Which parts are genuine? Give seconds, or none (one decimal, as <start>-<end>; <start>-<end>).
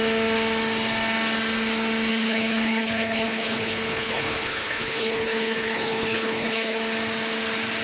0.0-2.1; 6.8-7.8